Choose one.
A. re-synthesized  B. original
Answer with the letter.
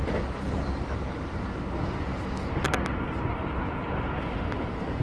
B